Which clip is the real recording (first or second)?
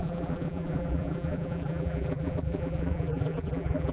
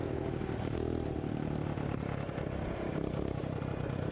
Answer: second